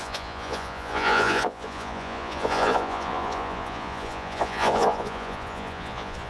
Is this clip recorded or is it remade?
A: remade